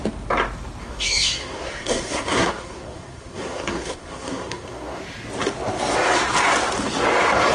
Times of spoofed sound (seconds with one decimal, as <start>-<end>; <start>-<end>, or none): 0.8-5.0